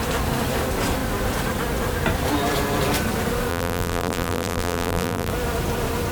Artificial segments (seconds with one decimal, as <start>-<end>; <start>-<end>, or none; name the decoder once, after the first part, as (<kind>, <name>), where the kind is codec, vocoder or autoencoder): 3.5-5.3 (vocoder, BigVGAN v2)